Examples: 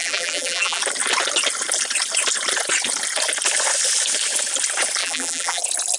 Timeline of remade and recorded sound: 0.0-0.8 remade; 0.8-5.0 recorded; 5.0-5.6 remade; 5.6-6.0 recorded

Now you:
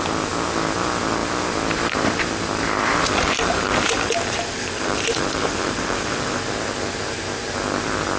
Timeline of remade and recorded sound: 0.0-3.0 recorded; 3.0-6.4 remade; 6.4-8.2 recorded

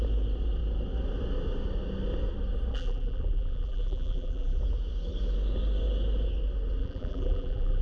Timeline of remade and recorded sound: 0.0-2.7 recorded; 2.7-4.6 remade; 4.6-6.8 recorded; 6.8-7.8 remade

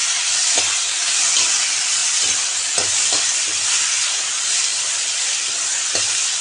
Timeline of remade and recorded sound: 0.0-0.6 remade; 0.6-2.0 recorded; 2.0-3.2 remade; 3.2-4.7 recorded; 4.7-6.0 remade; 6.0-6.4 recorded

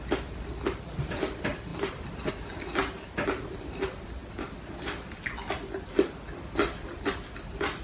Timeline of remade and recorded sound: 0.0-7.8 recorded

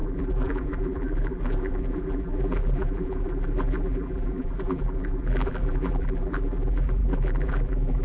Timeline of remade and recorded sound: 0.0-8.0 remade

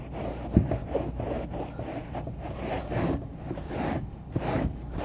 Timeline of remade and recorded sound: 0.0-0.8 recorded; 0.8-1.6 remade; 1.6-2.0 recorded; 2.0-5.0 remade

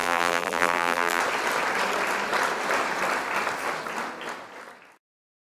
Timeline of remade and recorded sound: 0.0-1.2 remade; 1.2-5.5 recorded